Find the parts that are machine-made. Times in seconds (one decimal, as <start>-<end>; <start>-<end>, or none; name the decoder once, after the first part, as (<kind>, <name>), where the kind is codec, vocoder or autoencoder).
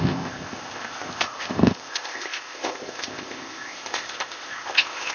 0.0-5.1 (codec, ZipCodec)